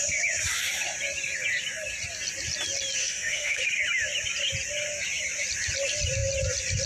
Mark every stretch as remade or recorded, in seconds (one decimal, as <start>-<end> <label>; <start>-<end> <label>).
0.0-3.0 recorded; 3.0-3.6 remade; 3.6-6.9 recorded